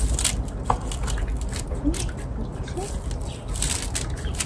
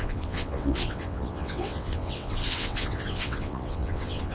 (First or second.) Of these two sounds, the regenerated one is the second